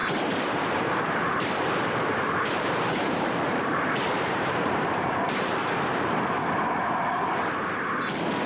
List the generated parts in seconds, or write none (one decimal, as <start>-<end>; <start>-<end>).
0.0-5.1

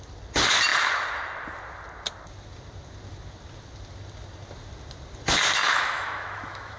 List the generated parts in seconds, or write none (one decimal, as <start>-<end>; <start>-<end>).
5.6-6.8

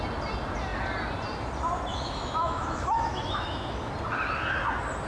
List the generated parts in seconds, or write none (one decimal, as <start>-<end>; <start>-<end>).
1.9-3.9

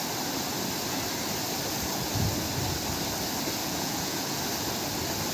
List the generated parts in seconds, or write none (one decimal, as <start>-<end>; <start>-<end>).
3.6-4.4